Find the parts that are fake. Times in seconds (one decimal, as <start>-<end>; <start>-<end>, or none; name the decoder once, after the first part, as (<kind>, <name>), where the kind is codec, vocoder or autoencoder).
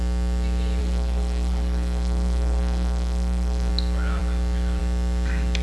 0.8-3.7 (codec, SNAC)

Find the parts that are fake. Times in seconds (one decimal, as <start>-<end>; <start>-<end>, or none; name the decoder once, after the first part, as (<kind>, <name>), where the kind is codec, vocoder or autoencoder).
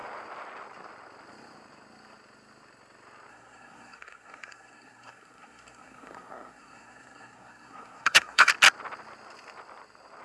3.3-8.5 (codec, SNAC)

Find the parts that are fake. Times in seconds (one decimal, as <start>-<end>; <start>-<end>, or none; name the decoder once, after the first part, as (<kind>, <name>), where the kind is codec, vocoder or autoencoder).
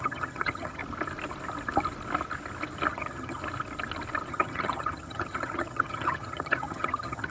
0.0-0.8 (vocoder, HiFi-GAN); 2.9-3.4; 4.3-7.3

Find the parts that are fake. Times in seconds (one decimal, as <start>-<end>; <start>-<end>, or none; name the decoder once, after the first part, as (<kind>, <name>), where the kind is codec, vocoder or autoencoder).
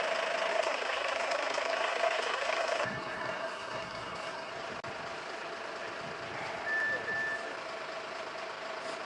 0.5-4.5 (codec, SNAC)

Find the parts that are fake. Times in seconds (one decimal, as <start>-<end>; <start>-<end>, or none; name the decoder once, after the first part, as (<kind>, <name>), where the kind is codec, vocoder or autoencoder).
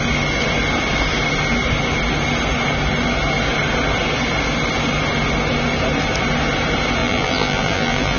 7.0-8.2 (vocoder, BigVGAN v2)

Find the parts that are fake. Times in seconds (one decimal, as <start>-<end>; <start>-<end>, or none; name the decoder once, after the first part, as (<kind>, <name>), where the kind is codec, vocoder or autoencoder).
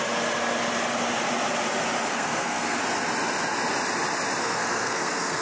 2.1-2.8 (codec, SNAC); 4.4-5.4